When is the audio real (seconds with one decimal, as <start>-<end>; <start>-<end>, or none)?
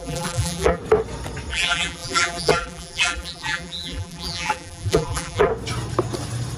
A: 0.8-1.5; 5.5-6.6